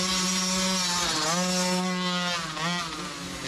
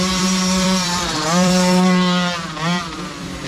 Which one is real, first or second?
first